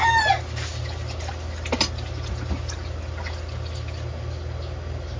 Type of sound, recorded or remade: recorded